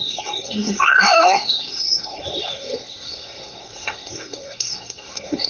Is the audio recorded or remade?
remade